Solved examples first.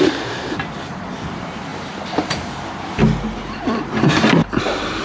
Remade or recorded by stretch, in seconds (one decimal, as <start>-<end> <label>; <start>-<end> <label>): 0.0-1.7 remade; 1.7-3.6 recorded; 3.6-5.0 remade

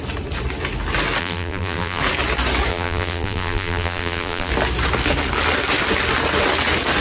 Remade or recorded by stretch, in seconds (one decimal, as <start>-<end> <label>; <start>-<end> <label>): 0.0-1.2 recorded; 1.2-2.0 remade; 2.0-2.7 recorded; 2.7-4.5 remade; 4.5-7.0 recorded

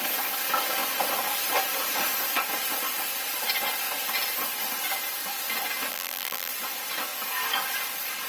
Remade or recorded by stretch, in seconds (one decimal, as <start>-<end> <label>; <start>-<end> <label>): 0.0-5.9 recorded; 5.9-6.5 remade; 6.5-8.3 recorded